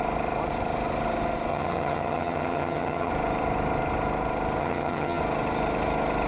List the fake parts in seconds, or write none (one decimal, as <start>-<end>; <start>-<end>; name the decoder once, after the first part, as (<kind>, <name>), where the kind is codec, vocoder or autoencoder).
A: 1.5-3.1 (vocoder, HiFi-GAN); 4.6-5.2